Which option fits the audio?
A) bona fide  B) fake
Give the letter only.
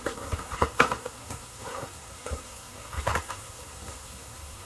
B